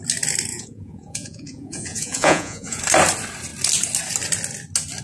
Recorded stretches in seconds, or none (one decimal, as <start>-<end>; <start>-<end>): 0.0-0.5; 2.8-5.0